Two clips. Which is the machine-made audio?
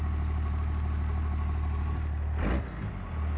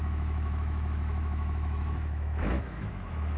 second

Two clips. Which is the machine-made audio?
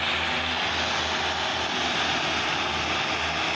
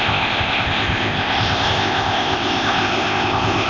second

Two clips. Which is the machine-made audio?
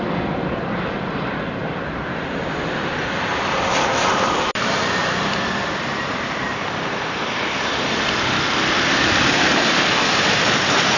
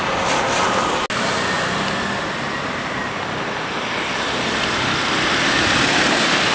first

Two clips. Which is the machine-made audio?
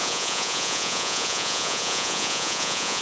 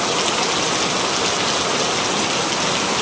first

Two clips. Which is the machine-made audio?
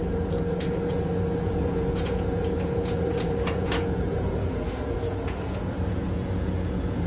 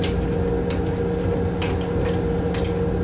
first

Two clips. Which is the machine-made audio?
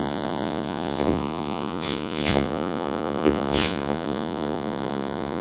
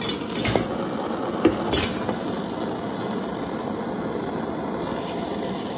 first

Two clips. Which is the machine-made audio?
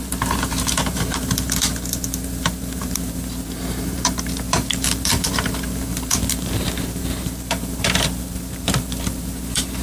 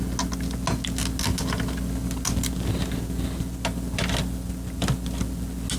first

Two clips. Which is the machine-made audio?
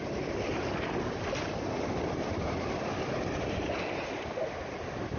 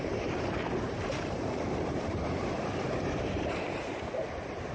second